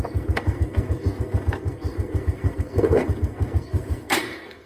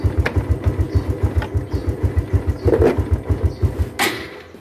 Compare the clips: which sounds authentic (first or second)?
second